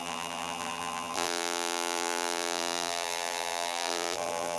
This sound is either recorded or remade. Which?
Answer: remade